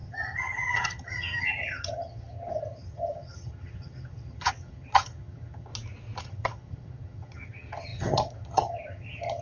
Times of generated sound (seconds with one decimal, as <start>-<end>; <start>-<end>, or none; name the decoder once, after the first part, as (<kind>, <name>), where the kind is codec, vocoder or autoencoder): 0.0-5.7 (vocoder, HiFi-GAN); 6.2-9.4